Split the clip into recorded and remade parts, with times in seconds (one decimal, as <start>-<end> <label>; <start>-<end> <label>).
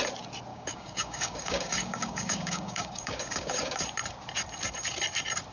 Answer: 0.0-0.5 recorded; 0.5-3.8 remade; 3.8-5.5 recorded